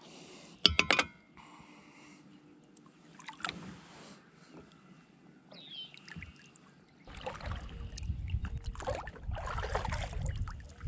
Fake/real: real